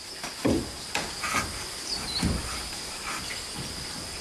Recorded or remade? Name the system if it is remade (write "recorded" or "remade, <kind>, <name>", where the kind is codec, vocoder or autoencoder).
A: recorded